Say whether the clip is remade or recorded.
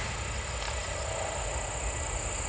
recorded